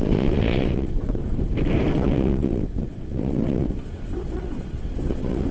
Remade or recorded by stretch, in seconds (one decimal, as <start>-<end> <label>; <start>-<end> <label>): 0.0-1.2 remade; 1.2-1.9 recorded; 1.9-5.5 remade